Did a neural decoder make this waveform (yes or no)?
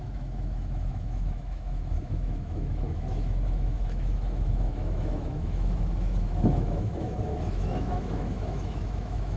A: yes